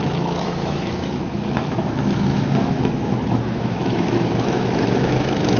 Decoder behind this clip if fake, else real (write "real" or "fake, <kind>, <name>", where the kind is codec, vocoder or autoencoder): fake, autoencoder, DAC-VAE